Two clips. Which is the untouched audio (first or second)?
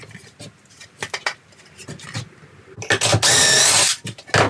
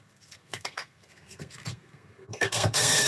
first